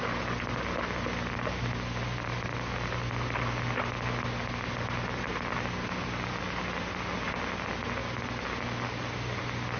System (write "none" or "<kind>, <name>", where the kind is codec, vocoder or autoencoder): none